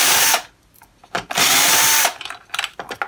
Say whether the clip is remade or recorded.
recorded